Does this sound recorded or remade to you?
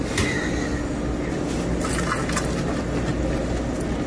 recorded